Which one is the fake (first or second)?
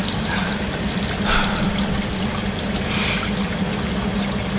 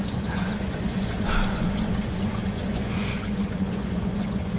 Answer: second